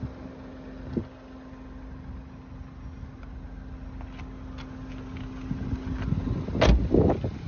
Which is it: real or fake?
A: real